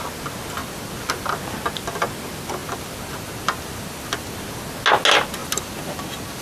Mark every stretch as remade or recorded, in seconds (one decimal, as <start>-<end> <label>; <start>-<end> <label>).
0.0-0.6 recorded; 0.6-1.3 remade; 1.3-2.6 recorded; 2.6-4.7 remade; 4.7-5.4 recorded; 5.4-6.4 remade